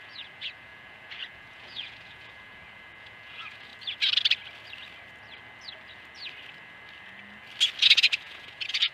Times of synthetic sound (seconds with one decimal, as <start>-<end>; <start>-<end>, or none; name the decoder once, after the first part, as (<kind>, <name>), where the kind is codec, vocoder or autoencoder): 0.0-3.7 (vocoder, Vocos); 7.8-8.9